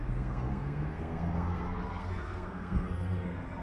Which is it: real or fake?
fake